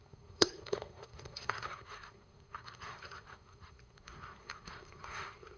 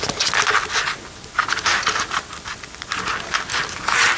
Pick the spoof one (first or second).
first